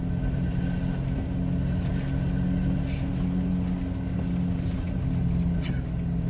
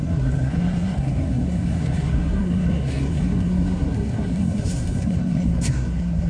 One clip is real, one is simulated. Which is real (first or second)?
first